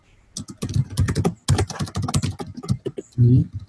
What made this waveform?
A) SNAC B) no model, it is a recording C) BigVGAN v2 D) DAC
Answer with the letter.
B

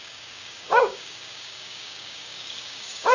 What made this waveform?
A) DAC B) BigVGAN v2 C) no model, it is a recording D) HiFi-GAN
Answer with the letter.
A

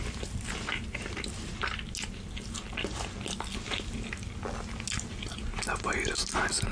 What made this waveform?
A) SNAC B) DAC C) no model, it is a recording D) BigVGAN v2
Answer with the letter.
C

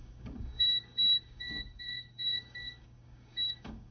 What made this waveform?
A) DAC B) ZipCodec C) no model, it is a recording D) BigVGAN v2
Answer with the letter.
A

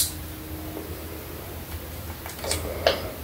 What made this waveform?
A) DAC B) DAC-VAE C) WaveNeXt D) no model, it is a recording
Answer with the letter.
D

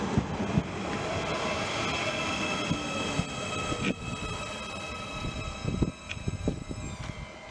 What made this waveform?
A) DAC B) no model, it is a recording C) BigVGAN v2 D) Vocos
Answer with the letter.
B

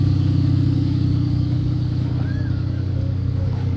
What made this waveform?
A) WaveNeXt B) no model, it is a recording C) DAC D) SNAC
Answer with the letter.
C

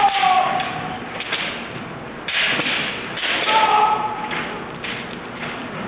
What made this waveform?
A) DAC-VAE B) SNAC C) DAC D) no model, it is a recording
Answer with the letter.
D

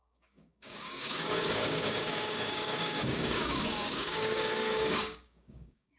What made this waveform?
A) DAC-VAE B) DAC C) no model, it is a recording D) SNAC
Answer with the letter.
B